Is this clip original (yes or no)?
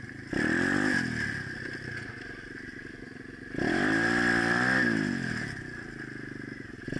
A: yes